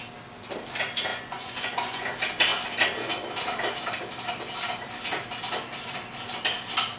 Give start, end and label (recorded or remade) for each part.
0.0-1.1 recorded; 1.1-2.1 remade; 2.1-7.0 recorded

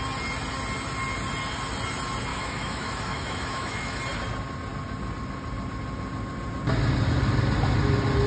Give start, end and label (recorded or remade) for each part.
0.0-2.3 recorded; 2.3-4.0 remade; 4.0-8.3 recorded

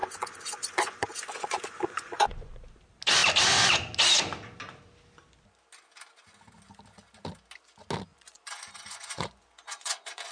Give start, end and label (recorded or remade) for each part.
0.0-2.5 remade; 2.5-8.1 recorded; 8.1-10.3 remade

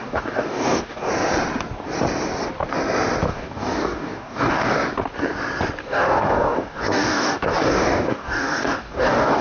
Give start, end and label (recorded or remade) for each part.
0.0-1.1 remade; 1.1-3.3 recorded; 3.3-4.8 remade; 4.8-5.8 recorded; 5.8-9.4 remade

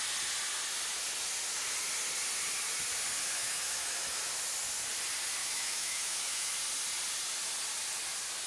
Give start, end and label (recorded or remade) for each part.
0.0-3.4 recorded; 3.4-4.2 remade; 4.2-5.4 recorded; 5.4-6.5 remade; 6.5-8.5 recorded

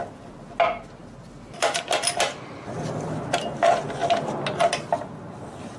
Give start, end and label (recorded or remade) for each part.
0.0-5.8 recorded